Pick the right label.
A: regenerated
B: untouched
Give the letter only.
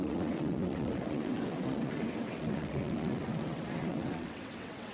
A